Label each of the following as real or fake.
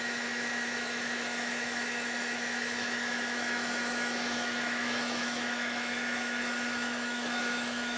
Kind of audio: fake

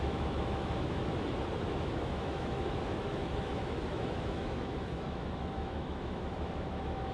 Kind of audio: fake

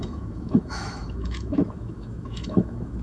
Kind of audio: fake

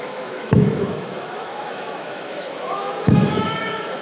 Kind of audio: fake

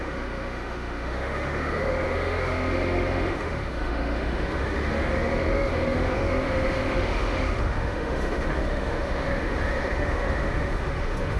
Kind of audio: fake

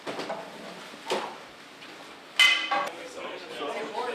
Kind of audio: real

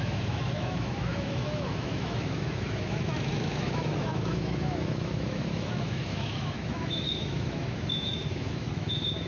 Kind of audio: fake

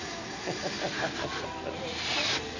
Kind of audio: real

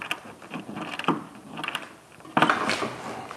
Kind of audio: real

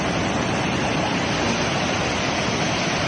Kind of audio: real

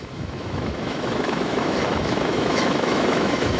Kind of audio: fake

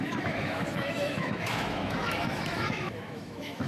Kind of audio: fake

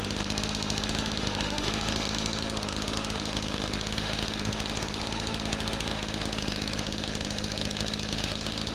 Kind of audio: fake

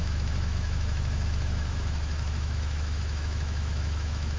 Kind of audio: fake